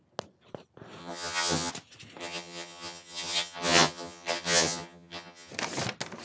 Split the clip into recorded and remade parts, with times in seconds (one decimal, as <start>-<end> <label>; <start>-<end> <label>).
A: 0.0-1.0 recorded; 1.0-1.7 remade; 1.7-2.2 recorded; 2.2-5.5 remade; 5.5-6.2 recorded